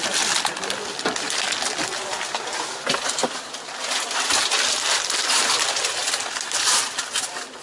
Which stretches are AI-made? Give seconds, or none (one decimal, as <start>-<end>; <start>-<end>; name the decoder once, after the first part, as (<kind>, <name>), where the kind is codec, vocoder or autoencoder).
none